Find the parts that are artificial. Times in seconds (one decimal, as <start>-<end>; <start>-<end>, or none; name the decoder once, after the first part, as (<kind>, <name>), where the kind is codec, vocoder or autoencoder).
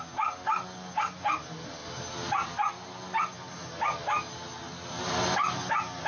none